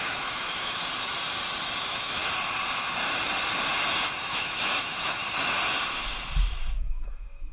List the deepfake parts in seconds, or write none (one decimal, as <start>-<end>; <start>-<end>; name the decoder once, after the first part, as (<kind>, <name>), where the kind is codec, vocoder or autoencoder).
0.0-0.8 (autoencoder, DAC-VAE); 1.8-2.2; 4.2-5.2; 6.8-7.5